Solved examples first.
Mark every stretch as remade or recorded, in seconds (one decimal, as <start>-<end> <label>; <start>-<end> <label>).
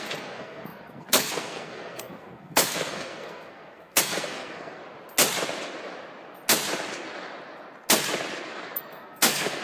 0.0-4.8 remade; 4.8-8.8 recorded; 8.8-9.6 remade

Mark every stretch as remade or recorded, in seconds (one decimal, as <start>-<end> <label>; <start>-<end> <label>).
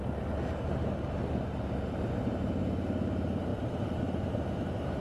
0.0-5.0 recorded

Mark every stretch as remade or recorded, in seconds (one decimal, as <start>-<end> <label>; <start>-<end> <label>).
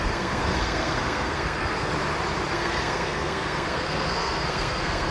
0.0-1.9 remade; 1.9-2.5 recorded; 2.5-5.1 remade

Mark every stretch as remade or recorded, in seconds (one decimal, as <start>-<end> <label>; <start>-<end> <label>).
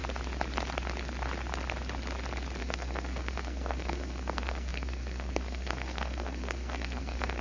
0.0-2.6 recorded; 2.6-7.4 remade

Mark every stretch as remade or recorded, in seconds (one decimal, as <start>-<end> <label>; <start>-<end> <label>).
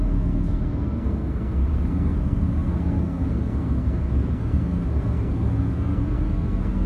0.0-6.9 remade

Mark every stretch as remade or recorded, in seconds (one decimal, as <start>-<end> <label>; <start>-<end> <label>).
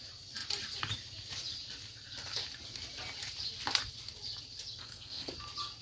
0.0-4.8 recorded; 4.8-5.3 remade; 5.3-5.8 recorded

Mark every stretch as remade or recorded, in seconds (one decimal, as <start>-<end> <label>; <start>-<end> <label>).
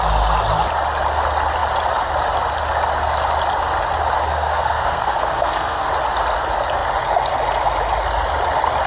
0.0-4.3 recorded; 4.3-5.9 remade; 5.9-8.9 recorded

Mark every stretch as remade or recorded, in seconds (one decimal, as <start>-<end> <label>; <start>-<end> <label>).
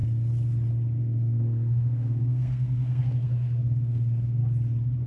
0.0-1.0 recorded; 1.0-4.4 remade; 4.4-5.1 recorded